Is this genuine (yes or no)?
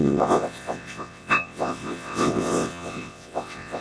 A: no